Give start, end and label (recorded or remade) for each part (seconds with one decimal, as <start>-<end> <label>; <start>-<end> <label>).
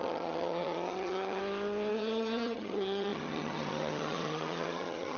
0.0-1.4 remade; 1.4-1.9 recorded; 1.9-5.2 remade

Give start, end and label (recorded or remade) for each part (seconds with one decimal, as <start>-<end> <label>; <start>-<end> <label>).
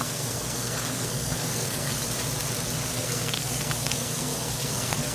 0.0-2.0 remade; 2.0-2.9 recorded; 2.9-5.1 remade